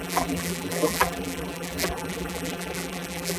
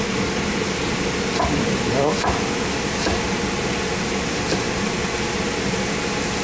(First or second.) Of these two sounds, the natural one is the second